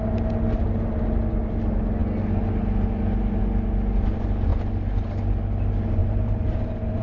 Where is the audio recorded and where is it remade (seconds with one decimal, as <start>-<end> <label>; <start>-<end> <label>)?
0.0-6.0 recorded; 6.0-7.0 remade